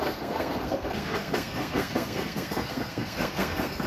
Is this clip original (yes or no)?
no